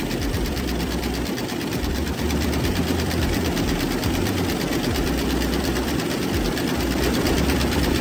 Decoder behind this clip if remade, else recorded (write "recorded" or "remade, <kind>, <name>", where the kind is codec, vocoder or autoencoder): remade, vocoder, BigVGAN v2